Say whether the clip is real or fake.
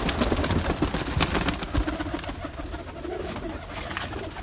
real